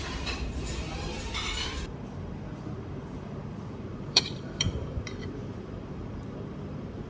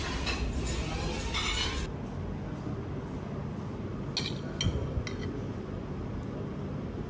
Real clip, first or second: second